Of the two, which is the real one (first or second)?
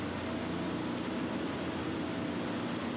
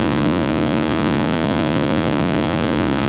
first